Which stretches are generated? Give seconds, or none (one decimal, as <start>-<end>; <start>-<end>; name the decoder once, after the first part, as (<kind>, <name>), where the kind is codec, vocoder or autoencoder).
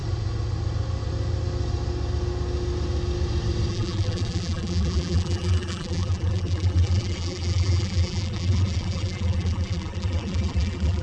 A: 3.7-11.0 (vocoder, BigVGAN v2)